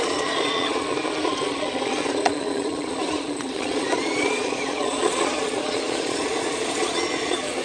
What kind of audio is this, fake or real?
fake